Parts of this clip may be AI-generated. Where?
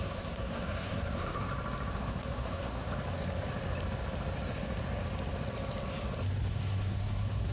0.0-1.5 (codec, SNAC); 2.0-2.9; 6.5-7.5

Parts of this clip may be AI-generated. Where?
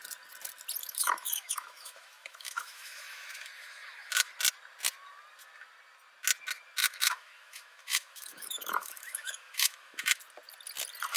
0.8-4.3 (autoencoder, DAC-VAE); 6.8-10.2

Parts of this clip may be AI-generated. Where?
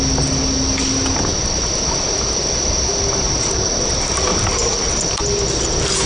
none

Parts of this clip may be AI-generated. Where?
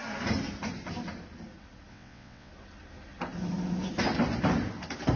1.9-2.5 (vocoder, WaveNeXt)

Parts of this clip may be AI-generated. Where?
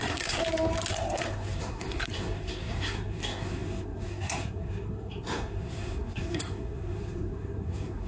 0.0-0.4 (codec, SNAC); 0.9-8.1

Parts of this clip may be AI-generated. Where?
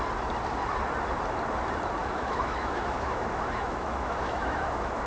2.0-5.1 (autoencoder, DAC-VAE)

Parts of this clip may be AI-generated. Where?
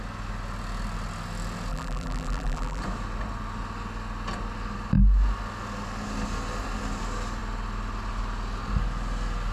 1.7-2.8 (vocoder, BigVGAN v2)